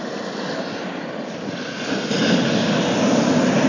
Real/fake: real